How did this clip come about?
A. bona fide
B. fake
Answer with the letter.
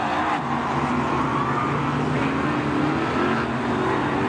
A